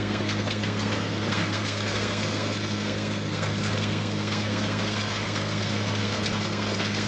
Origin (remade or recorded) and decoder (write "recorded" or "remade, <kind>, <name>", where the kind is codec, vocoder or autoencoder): remade, codec, SNAC